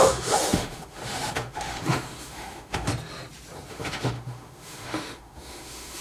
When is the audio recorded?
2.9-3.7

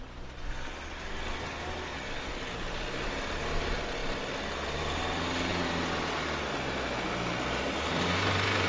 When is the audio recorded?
0.0-8.7

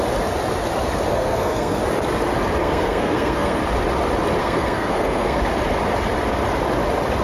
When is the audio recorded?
0.0-1.1; 1.8-2.6; 3.6-4.4; 5.4-7.2

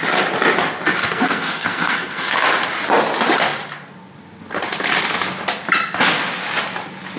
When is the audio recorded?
0.0-1.0; 2.3-7.2

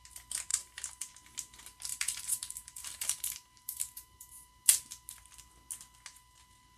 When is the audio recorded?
0.0-0.5; 1.1-1.9; 4.5-6.8

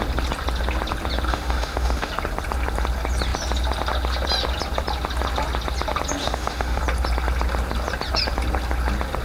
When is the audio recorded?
0.0-1.3; 2.1-6.2; 6.8-9.2